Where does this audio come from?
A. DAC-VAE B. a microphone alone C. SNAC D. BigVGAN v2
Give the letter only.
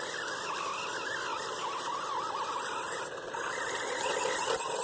D